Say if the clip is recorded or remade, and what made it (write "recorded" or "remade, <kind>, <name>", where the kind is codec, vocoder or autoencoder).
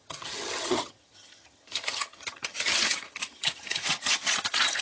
remade, vocoder, HiFi-GAN